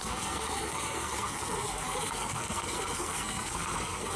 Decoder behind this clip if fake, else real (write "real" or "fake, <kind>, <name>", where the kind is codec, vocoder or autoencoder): fake, codec, SNAC